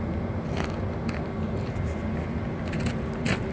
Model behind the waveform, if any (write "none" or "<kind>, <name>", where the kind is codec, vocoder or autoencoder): none